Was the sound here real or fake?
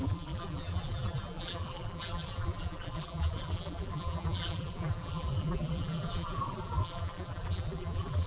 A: fake